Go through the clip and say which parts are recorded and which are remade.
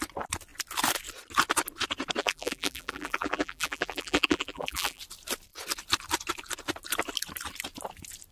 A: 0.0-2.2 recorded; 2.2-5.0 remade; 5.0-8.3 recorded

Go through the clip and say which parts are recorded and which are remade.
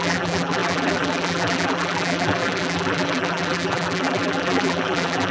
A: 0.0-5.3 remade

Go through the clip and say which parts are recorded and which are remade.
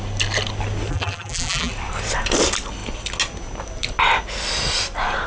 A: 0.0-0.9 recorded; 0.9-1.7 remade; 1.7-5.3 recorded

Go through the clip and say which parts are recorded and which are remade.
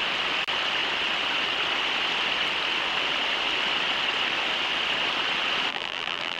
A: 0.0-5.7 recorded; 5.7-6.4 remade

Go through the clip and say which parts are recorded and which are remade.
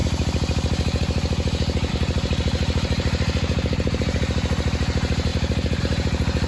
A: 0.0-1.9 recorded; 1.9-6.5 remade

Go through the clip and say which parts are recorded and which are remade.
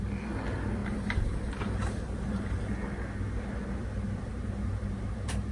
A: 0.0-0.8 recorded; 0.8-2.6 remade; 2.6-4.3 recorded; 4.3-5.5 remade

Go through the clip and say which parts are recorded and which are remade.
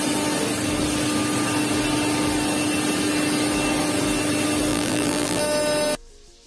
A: 0.0-4.7 recorded; 4.7-5.4 remade; 5.4-6.5 recorded